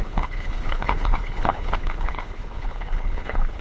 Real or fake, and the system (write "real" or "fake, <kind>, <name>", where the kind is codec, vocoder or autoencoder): fake, codec, HILCodec